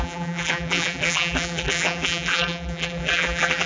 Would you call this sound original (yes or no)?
no